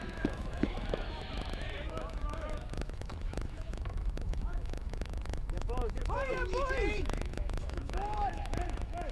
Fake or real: fake